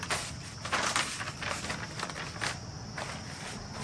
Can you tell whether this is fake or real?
real